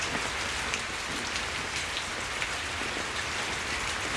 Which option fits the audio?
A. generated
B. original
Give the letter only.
B